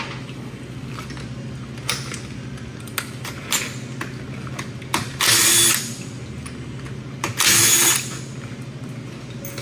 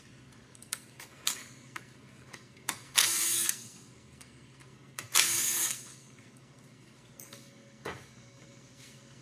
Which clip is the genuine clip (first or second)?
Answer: first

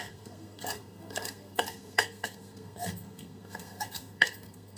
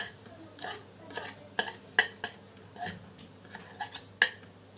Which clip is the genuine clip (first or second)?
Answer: second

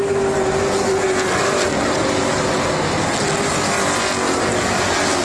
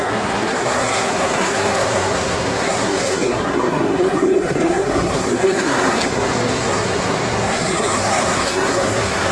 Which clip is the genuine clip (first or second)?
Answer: first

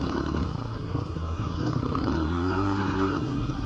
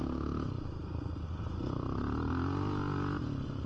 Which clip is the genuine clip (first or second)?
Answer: second